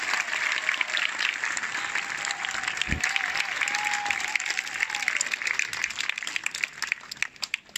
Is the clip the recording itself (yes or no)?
yes